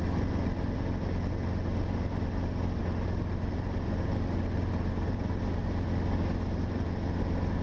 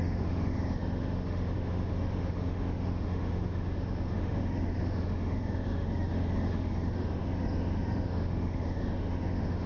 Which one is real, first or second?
first